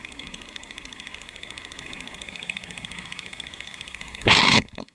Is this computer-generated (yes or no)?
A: yes